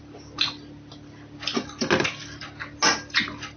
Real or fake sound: real